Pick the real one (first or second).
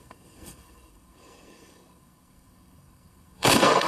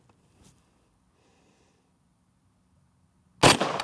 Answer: second